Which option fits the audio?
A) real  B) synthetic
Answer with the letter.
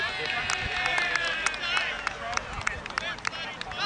A